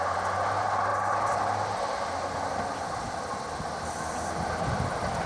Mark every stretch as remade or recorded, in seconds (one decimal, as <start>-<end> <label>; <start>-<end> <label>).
0.0-5.3 recorded